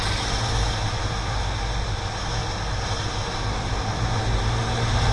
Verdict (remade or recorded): recorded